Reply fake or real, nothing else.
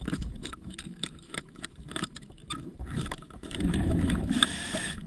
fake